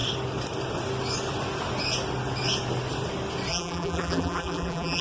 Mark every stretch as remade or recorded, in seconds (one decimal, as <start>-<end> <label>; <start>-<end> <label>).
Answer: 0.0-3.5 recorded; 3.5-5.0 remade